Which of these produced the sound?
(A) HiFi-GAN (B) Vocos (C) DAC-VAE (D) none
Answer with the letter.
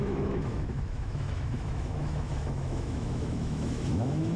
C